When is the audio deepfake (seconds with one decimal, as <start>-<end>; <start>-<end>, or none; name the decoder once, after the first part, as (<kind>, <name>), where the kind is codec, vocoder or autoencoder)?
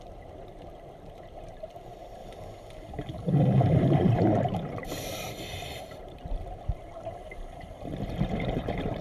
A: 0.0-2.2 (vocoder, BigVGAN v2); 2.9-9.0